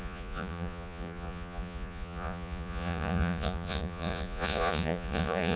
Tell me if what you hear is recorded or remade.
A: remade